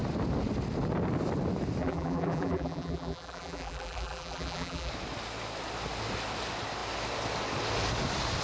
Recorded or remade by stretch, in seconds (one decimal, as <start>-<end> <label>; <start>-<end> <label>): 0.0-1.8 recorded; 1.8-4.9 remade; 4.9-8.4 recorded